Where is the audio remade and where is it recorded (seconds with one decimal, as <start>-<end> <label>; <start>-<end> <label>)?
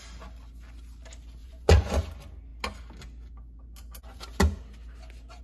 0.0-1.4 recorded; 1.4-2.0 remade; 2.0-5.4 recorded